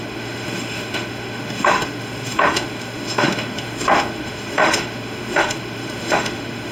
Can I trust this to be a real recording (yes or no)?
no